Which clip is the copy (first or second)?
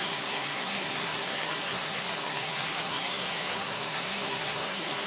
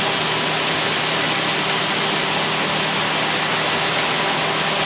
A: first